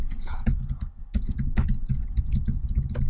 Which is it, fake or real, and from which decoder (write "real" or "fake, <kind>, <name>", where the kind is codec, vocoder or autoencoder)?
real